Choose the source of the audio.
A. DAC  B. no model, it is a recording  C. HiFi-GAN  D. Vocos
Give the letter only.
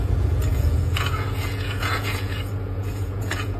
D